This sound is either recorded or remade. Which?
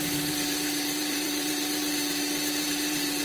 remade